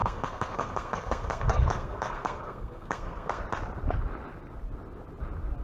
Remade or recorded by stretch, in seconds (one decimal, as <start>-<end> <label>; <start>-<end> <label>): 0.0-3.4 remade; 3.4-5.6 recorded